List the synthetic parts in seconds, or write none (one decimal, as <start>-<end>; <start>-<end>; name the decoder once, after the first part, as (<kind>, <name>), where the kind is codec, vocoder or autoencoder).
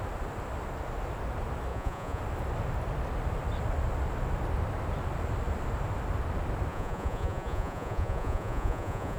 1.7-2.2 (vocoder, Vocos); 6.7-9.2